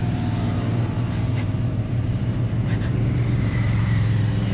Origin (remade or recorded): remade